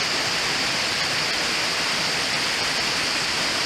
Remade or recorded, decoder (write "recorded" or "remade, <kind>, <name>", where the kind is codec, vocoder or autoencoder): recorded